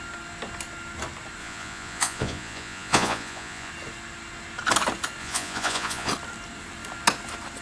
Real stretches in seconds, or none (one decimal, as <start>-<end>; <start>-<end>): 0.0-1.4; 3.7-5.2; 6.1-7.6

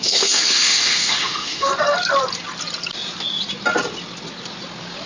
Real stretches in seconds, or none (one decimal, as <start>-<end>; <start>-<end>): 1.7-5.1

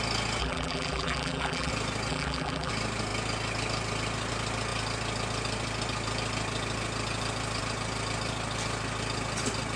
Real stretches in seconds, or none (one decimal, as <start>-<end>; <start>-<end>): 0.0-0.4; 1.7-2.1; 2.7-9.8

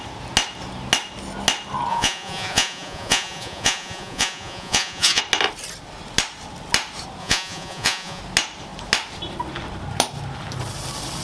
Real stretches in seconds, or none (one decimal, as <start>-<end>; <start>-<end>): 0.0-1.9; 5.2-7.2; 8.2-11.2

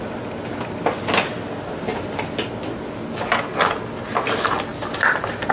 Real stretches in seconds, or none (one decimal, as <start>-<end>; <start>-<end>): 0.0-4.7